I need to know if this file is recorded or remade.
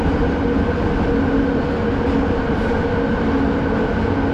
recorded